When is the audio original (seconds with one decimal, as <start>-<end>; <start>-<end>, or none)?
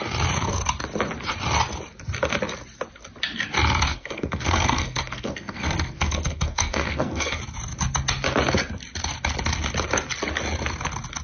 0.0-3.9; 7.4-11.2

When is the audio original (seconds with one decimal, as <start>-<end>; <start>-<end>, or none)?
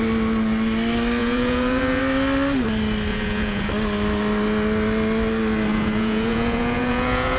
0.0-1.2; 2.0-3.1; 3.7-5.7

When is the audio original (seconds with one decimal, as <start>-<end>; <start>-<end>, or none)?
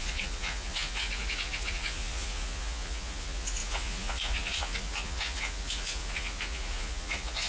none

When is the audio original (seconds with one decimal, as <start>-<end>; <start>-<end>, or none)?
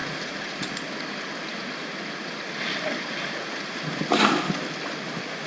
0.0-5.5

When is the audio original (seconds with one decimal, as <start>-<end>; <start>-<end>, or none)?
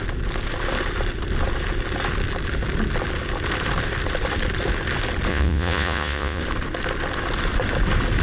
0.0-5.3; 6.4-8.2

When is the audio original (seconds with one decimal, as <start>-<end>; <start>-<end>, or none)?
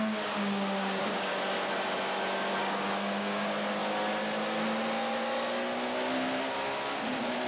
1.3-2.6; 3.8-7.5